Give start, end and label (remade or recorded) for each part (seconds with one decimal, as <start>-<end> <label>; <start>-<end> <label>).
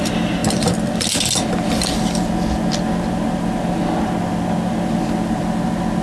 0.0-6.0 recorded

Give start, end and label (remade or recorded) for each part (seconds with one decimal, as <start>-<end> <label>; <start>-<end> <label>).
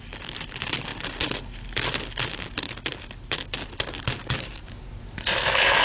0.0-4.2 recorded; 4.2-4.8 remade; 4.8-5.8 recorded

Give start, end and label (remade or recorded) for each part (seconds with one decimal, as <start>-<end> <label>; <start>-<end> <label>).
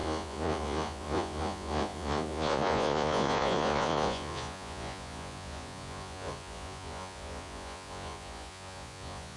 0.0-9.4 remade